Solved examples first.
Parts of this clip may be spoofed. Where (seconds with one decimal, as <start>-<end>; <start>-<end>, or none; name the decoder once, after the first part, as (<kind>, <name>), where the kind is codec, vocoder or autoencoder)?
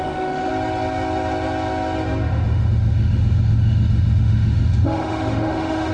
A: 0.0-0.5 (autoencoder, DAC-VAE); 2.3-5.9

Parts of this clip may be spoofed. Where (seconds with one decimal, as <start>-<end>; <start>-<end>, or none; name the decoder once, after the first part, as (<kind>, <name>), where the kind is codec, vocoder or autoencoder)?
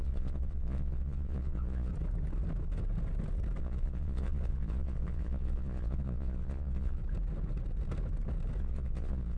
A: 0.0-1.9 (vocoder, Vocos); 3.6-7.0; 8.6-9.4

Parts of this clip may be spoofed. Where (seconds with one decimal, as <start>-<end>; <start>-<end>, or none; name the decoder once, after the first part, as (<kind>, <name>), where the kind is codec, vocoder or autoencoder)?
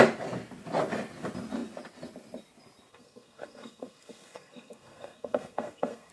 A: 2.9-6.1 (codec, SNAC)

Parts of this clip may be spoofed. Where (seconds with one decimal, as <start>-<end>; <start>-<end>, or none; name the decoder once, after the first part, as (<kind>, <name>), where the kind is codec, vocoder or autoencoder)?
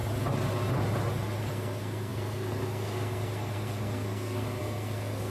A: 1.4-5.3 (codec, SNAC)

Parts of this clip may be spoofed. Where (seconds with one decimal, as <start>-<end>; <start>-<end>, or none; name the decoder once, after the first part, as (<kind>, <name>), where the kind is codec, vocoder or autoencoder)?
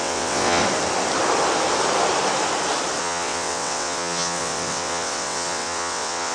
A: 0.0-0.6 (vocoder, WaveNeXt); 3.0-6.3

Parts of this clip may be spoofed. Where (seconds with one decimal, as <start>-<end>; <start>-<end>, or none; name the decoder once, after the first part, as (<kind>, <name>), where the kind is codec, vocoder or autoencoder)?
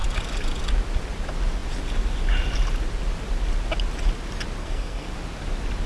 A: 4.6-5.1 (codec, SNAC)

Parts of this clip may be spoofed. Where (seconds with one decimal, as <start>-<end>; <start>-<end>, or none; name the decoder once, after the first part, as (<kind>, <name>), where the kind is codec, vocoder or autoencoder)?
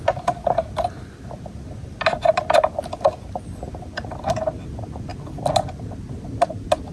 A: none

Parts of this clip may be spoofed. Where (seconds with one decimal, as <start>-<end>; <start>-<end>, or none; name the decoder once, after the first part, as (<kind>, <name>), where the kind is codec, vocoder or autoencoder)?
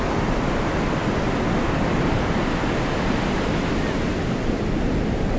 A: none